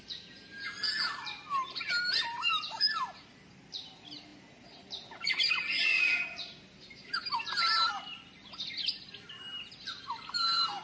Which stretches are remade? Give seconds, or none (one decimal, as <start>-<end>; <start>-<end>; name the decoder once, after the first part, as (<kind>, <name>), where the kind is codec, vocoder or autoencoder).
none